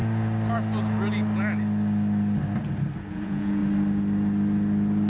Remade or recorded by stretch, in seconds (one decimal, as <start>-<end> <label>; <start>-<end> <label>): 0.0-3.1 recorded; 3.1-3.6 remade; 3.6-5.1 recorded